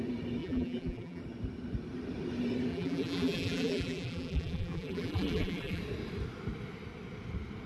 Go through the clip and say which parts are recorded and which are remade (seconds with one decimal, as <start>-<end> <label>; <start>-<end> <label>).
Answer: 0.0-0.4 recorded; 0.4-1.2 remade; 1.2-2.7 recorded; 2.7-5.8 remade; 5.8-7.7 recorded